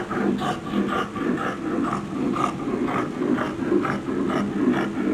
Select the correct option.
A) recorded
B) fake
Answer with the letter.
A